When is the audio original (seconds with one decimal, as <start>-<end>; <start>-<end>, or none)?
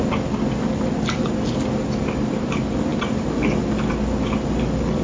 0.0-5.0